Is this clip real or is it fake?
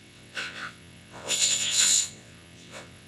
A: fake